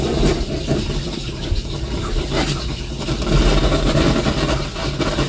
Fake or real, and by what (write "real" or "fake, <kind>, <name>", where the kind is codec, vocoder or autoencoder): real